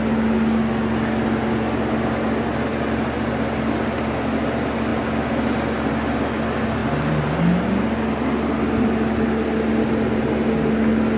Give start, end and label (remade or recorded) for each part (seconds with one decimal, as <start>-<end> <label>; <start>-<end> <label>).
0.0-2.7 recorded; 2.7-3.3 remade; 3.3-4.9 recorded; 4.9-5.9 remade; 5.9-6.8 recorded; 6.8-8.9 remade; 8.9-11.2 recorded